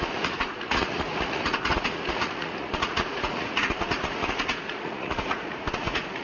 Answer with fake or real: fake